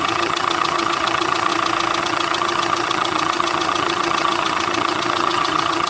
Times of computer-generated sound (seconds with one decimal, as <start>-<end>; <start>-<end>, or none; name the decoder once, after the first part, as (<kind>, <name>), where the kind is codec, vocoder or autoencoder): 0.0-1.5 (vocoder, HiFi-GAN); 2.0-5.9